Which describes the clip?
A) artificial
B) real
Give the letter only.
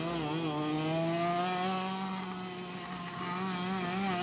B